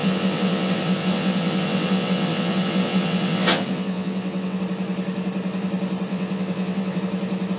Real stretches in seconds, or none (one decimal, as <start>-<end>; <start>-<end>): 4.6-6.1; 7.0-7.6